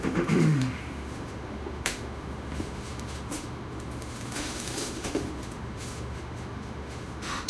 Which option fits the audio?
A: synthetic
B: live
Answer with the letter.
A